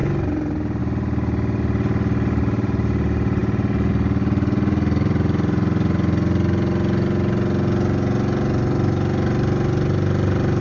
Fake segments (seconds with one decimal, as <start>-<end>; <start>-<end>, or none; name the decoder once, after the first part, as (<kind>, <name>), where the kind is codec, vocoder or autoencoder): none